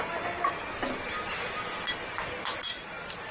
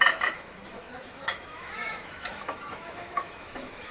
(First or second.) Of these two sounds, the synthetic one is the second